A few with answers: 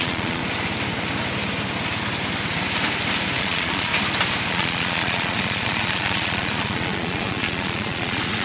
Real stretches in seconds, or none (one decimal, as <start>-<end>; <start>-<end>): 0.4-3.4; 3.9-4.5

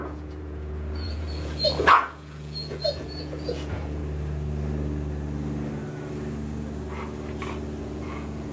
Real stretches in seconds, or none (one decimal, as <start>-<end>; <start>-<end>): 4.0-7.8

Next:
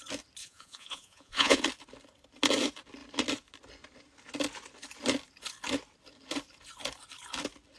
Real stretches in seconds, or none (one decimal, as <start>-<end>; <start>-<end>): 0.0-0.4; 1.6-7.8